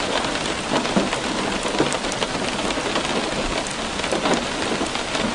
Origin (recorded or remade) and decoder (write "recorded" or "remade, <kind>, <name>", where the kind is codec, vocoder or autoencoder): recorded